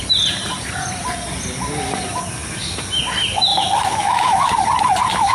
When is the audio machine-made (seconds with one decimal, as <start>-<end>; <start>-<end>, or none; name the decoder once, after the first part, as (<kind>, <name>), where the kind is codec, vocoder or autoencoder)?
3.5-4.5 (autoencoder, DAC-VAE)